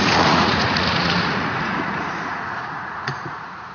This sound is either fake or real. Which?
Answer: fake